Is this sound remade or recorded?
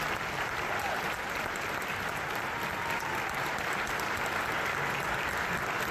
recorded